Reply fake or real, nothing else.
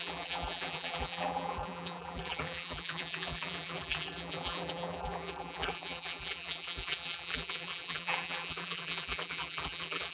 fake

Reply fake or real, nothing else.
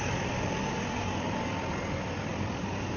real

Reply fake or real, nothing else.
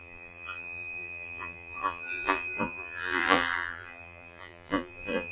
fake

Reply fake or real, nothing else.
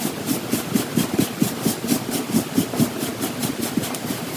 fake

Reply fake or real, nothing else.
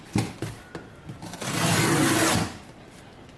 fake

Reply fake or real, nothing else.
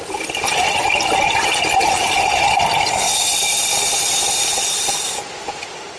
real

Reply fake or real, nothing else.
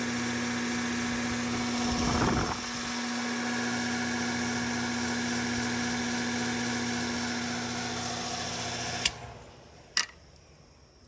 real